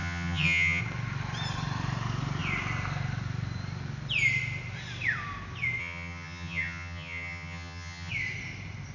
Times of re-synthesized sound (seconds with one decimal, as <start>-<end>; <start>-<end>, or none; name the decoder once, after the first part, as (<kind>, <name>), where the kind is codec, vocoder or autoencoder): 0.0-0.8 (vocoder, HiFi-GAN); 5.8-8.1